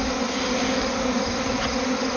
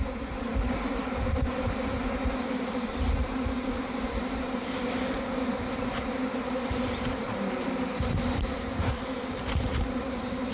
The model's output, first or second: second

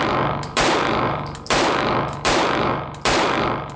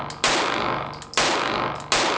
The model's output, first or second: first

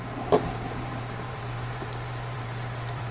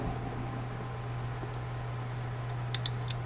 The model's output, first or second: first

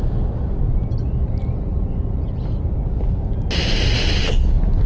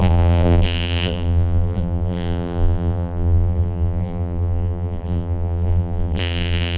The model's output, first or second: second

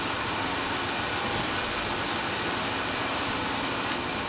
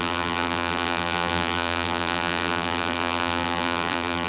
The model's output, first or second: second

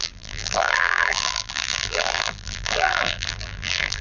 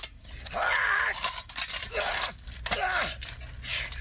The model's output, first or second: first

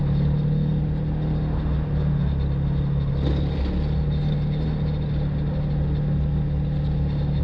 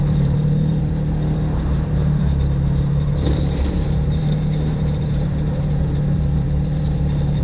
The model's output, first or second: second